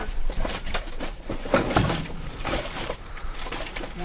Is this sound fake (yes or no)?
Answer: yes